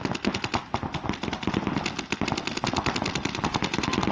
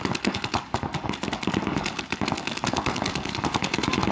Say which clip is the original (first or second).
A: first